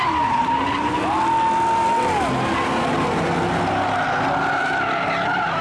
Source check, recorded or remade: recorded